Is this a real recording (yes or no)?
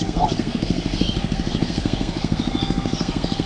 no